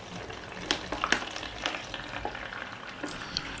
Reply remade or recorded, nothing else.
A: recorded